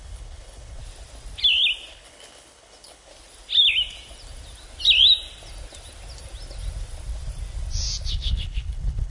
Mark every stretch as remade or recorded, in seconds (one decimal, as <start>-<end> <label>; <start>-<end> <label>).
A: 0.0-0.8 remade; 0.8-1.9 recorded; 1.9-3.1 remade; 3.1-8.1 recorded; 8.1-9.1 remade